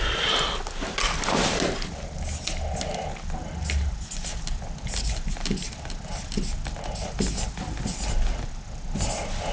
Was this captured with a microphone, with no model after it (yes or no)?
yes